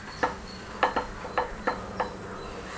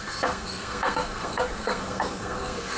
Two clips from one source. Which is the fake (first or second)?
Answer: second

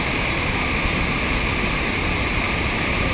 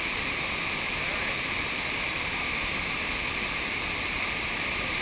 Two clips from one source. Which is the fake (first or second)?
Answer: second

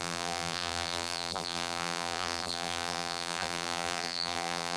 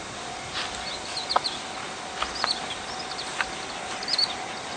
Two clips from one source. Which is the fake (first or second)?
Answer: first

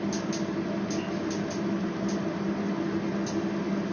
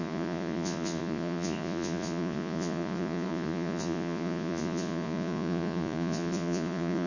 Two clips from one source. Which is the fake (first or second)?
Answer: second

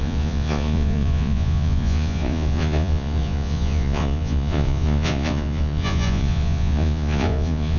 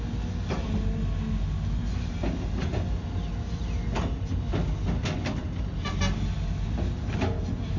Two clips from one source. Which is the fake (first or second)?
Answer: first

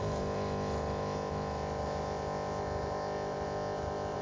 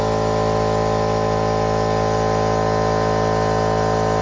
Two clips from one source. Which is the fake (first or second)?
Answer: first